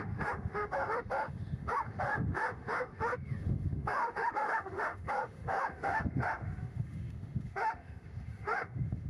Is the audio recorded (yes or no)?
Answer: no